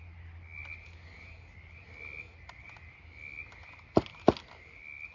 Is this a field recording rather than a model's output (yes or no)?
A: yes